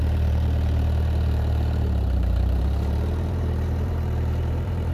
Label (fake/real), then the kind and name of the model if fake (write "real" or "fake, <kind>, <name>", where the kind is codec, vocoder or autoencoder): fake, vocoder, BigVGAN v2